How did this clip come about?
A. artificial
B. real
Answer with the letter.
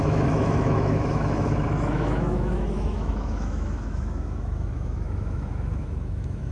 A